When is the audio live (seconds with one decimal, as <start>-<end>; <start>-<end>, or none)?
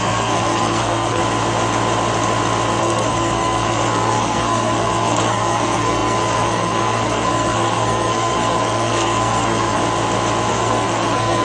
1.2-2.8; 9.8-10.5